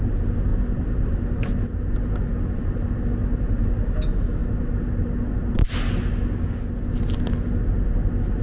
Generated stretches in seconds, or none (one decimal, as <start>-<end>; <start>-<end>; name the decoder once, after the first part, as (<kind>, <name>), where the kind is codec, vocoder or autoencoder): 0.5-1.1 (vocoder, BigVGAN v2)